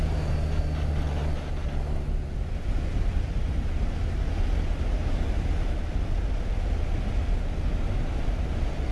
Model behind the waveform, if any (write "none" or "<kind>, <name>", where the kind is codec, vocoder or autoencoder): none